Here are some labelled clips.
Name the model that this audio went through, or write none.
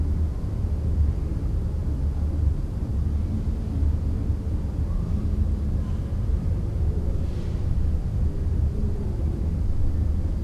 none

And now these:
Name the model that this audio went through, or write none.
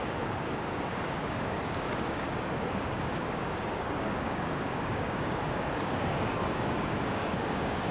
codec, DAC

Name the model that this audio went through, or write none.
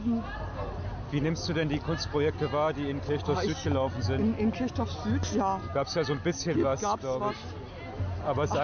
none